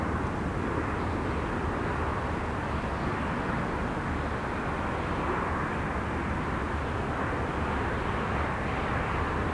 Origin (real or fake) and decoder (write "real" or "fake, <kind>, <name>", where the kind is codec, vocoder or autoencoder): real